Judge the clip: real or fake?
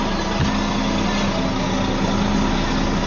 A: real